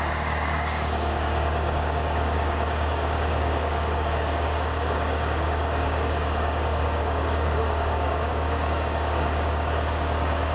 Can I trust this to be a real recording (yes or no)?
no